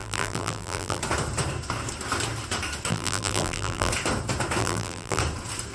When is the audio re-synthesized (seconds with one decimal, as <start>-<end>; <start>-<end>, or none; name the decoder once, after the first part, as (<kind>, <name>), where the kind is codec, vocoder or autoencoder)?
0.0-1.0 (vocoder, BigVGAN v2); 2.9-3.9; 4.6-5.2